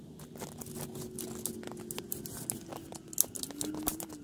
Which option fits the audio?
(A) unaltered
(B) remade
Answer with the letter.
A